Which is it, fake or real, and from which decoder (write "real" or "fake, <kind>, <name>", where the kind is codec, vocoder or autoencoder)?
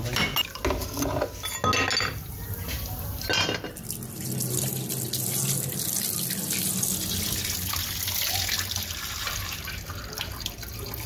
real